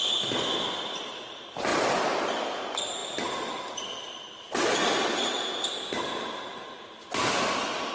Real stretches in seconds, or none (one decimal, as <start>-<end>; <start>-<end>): 0.0-1.7; 2.2-3.0; 5.3-7.9